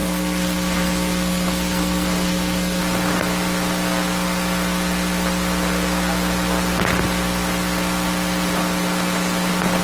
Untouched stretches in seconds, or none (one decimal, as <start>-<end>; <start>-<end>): 2.8-9.8